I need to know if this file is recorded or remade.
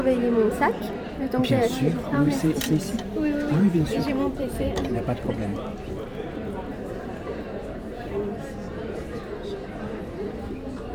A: remade